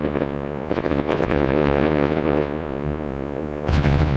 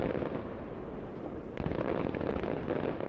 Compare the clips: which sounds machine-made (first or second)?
first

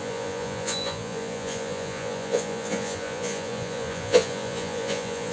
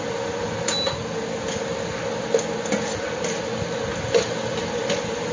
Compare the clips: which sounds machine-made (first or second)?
first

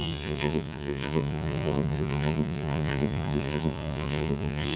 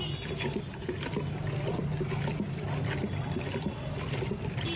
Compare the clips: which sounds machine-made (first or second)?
first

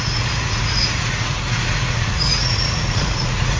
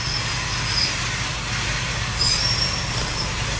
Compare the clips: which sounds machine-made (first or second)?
first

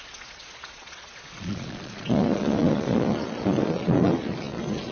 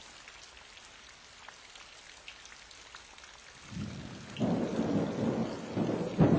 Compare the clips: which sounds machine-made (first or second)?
first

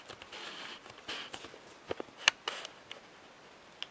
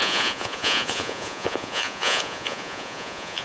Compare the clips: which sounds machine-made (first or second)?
second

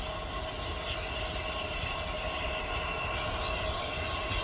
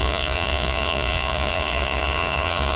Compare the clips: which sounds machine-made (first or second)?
second